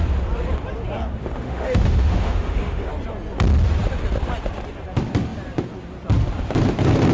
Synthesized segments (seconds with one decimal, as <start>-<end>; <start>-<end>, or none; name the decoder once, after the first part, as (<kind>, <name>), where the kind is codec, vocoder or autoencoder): 1.2-2.9 (autoencoder, DAC-VAE)